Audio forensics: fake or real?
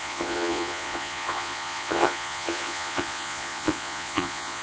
fake